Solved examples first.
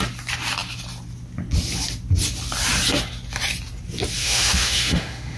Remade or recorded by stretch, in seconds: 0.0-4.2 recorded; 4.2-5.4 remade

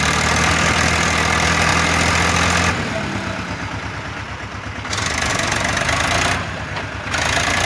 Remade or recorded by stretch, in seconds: 0.0-7.7 recorded

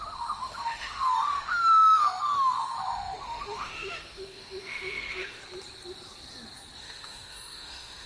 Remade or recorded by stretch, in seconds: 0.0-5.4 remade; 5.4-6.8 recorded; 6.8-8.1 remade

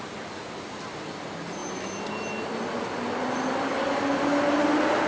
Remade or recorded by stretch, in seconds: 0.0-5.1 recorded

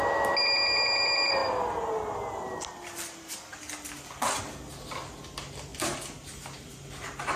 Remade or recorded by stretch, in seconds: 0.0-7.4 recorded